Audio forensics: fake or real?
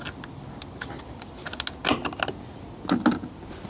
real